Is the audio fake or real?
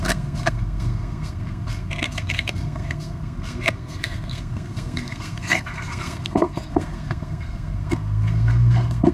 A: fake